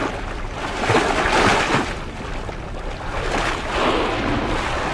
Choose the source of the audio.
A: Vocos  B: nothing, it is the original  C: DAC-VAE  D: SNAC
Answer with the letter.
B